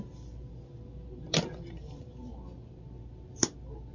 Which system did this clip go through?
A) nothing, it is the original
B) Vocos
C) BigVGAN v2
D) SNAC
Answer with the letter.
A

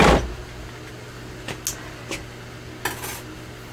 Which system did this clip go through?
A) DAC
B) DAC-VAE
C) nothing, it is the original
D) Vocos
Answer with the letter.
C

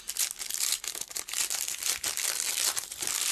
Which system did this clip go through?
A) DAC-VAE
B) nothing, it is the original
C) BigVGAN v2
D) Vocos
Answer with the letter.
B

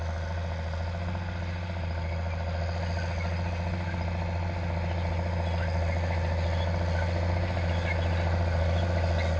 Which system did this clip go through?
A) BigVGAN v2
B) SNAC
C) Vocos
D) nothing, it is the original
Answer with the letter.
D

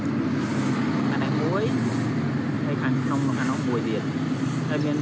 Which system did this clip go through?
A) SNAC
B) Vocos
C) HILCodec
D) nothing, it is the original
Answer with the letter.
D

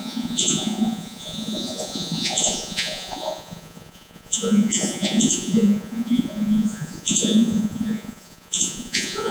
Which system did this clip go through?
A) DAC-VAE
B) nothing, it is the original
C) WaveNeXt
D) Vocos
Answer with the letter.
D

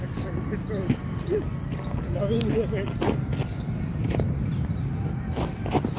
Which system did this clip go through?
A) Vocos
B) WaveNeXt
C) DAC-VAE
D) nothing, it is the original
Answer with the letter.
D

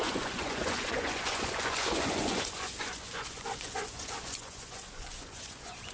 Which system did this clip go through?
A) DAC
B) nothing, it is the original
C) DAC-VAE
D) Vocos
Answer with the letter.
D